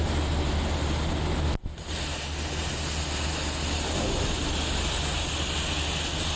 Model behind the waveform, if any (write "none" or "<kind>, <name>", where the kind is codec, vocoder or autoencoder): none